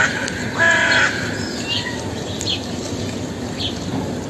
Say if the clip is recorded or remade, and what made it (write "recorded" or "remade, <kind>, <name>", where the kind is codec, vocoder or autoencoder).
recorded